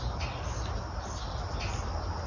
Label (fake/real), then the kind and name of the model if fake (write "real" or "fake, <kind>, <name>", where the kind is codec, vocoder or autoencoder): real